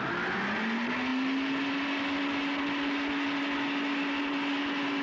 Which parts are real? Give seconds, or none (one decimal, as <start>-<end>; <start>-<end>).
0.0-5.0